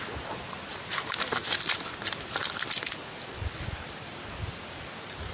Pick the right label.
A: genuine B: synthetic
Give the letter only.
A